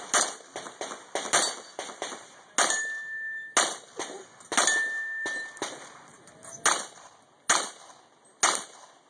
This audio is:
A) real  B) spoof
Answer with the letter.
A